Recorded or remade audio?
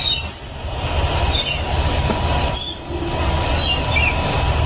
recorded